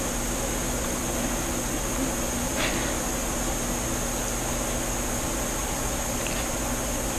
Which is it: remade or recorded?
recorded